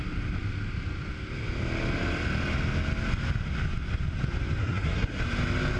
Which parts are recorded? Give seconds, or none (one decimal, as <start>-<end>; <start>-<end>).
0.0-4.6; 5.2-5.8